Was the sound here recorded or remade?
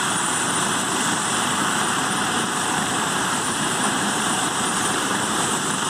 remade